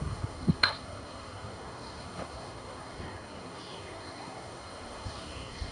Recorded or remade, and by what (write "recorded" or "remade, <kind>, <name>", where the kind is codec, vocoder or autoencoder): remade, codec, SNAC